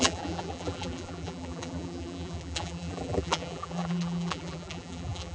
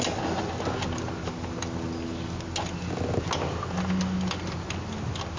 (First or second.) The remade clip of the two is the first